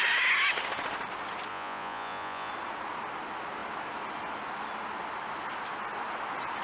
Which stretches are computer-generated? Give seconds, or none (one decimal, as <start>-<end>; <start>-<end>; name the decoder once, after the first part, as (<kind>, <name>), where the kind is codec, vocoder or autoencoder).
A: 1.5-2.5 (vocoder, Vocos)